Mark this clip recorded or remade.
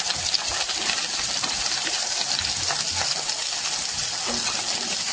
recorded